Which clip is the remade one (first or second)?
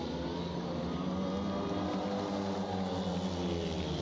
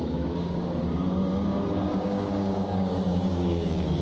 second